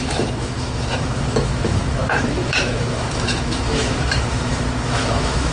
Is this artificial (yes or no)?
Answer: yes